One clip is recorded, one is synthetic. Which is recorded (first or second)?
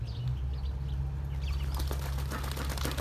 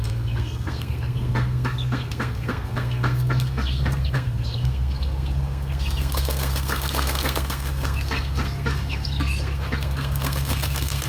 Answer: first